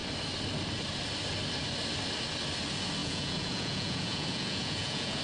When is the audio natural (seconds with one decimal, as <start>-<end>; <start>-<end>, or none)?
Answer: 0.0-3.0